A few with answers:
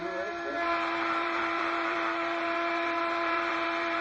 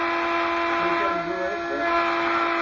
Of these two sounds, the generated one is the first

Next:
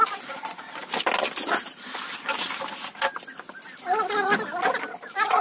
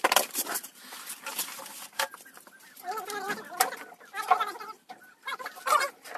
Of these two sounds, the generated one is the second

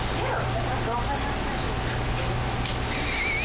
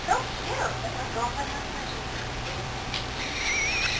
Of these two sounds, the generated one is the second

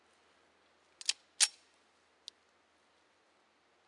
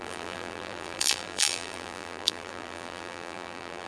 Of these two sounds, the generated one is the second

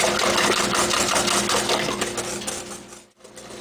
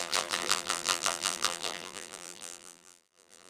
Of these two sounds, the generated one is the second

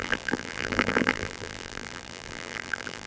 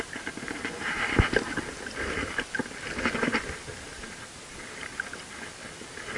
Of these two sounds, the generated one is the first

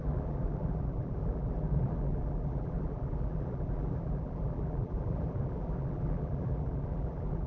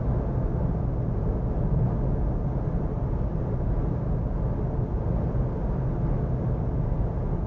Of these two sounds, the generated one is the first